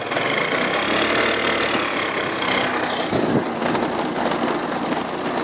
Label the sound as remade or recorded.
recorded